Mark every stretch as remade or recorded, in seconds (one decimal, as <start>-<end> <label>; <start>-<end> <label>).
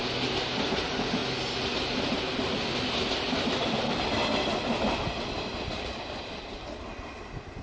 0.0-7.6 recorded